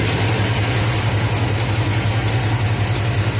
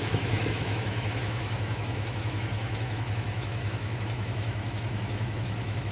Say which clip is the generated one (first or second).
second